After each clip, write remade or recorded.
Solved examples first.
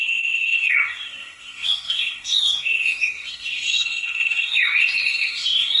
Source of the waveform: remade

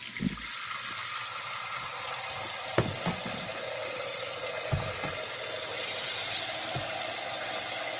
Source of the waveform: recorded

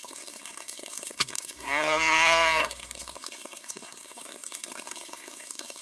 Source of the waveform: remade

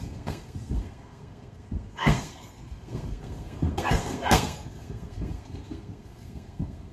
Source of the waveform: remade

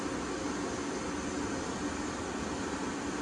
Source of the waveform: recorded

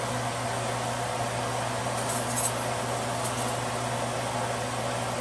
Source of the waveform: recorded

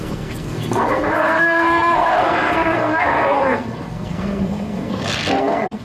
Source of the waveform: remade